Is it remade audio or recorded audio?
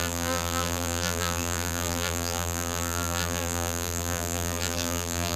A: remade